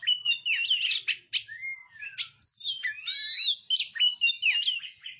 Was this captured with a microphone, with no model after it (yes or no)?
yes